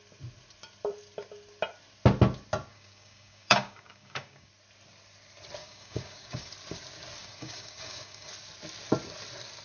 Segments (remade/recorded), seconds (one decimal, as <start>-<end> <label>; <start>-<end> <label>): 0.0-2.7 recorded; 2.7-4.5 remade; 4.5-5.6 recorded; 5.6-6.5 remade; 6.5-7.2 recorded; 7.2-8.3 remade; 8.3-9.6 recorded